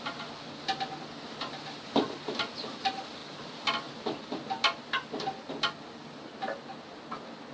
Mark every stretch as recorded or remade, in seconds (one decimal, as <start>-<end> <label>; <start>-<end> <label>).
0.0-7.5 recorded